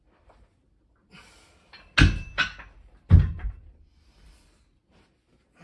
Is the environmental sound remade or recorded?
recorded